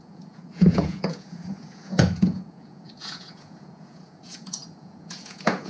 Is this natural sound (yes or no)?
no